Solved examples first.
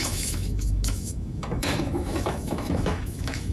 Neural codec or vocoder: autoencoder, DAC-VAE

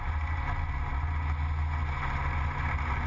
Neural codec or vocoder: none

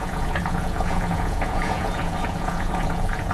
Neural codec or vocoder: vocoder, Vocos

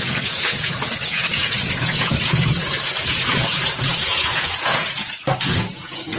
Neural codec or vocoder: vocoder, Vocos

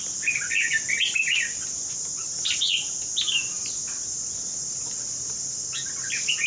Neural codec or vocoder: none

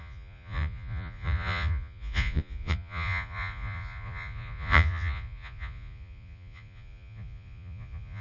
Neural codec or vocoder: vocoder, Vocos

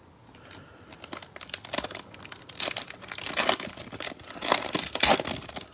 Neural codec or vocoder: none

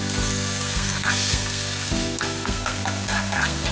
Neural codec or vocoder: codec, SNAC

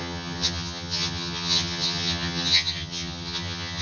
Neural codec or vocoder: vocoder, HiFi-GAN